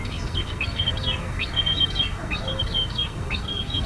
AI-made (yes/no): yes